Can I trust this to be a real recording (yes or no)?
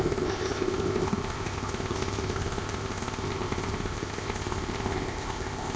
no